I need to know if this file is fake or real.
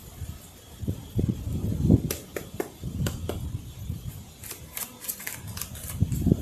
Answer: real